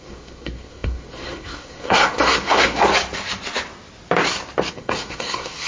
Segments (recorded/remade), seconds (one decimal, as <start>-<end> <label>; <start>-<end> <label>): 0.0-2.9 remade; 2.9-4.7 recorded; 4.7-5.7 remade